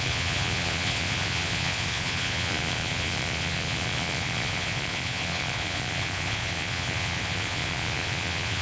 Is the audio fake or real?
fake